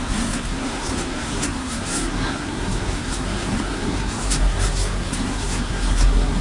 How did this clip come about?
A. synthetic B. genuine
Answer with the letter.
A